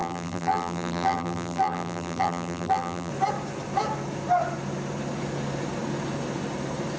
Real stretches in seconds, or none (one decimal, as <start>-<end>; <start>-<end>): 3.1-7.0

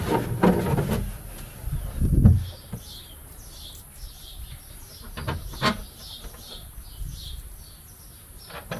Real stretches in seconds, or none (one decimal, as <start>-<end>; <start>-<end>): 0.0-8.8